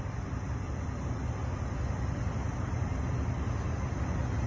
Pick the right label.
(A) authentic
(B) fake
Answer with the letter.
A